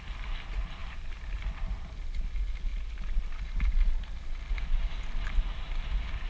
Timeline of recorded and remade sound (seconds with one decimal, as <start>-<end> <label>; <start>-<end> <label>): 0.0-0.8 recorded; 0.8-1.4 remade; 1.4-2.7 recorded; 2.7-4.8 remade; 4.8-6.3 recorded